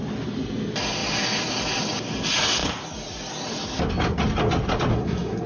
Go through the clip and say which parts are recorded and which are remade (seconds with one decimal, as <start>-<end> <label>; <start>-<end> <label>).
0.0-4.9 recorded; 4.9-5.5 remade